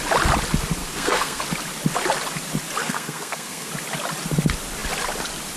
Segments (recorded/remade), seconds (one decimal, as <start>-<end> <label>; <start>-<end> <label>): 0.0-0.8 recorded; 0.8-1.4 remade; 1.4-2.8 recorded; 2.8-3.7 remade; 3.7-5.6 recorded